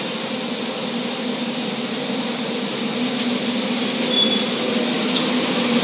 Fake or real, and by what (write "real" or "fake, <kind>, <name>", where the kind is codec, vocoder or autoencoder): real